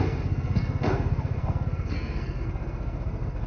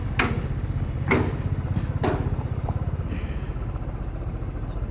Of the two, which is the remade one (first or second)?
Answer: first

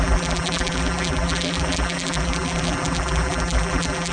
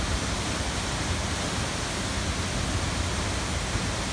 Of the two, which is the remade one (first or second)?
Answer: first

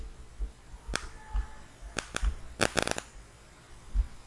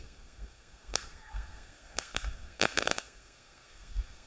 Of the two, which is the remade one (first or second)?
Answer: second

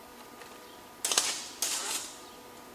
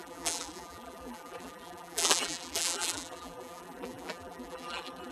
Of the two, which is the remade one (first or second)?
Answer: second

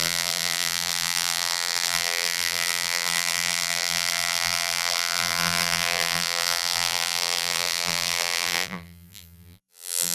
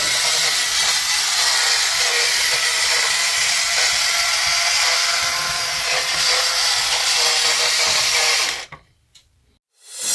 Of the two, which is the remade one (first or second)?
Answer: first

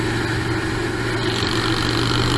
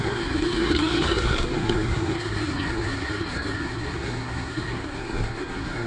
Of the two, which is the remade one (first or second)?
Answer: second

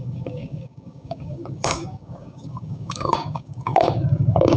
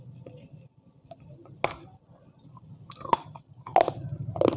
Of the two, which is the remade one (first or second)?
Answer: first